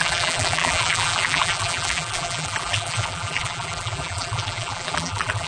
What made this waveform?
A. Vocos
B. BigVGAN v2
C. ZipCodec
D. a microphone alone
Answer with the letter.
B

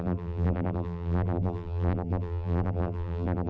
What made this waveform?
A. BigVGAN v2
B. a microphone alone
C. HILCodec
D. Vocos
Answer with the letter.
A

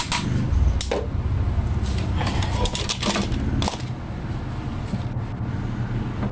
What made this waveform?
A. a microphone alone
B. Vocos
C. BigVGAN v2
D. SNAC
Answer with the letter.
A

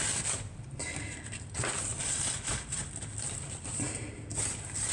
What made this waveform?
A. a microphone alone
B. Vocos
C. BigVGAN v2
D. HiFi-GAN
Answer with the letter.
C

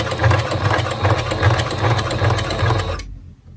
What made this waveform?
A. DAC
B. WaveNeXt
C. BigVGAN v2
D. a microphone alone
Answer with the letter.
D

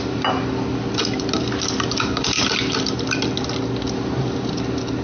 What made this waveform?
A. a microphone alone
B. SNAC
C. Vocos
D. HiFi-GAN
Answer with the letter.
A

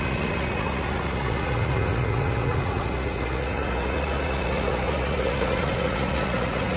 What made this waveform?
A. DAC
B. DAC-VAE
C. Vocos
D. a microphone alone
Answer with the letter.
C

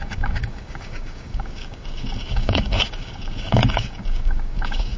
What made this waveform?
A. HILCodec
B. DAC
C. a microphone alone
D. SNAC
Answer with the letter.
B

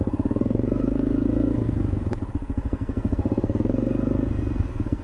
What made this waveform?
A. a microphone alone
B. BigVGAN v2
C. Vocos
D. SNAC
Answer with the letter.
D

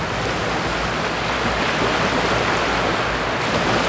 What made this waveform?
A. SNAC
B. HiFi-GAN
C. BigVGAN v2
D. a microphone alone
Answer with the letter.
D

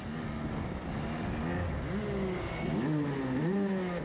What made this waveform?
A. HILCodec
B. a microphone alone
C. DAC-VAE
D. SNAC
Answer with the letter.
B